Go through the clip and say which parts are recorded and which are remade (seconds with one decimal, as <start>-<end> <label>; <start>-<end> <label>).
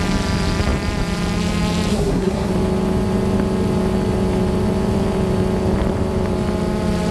0.0-1.9 recorded; 1.9-2.5 remade; 2.5-7.1 recorded